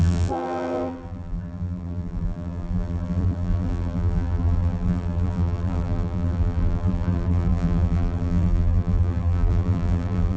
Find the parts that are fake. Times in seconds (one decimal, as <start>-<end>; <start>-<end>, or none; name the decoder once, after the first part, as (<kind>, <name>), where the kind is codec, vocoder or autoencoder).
0.0-10.4 (vocoder, BigVGAN v2)